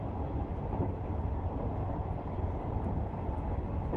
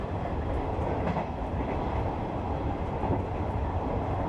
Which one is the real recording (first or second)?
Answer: first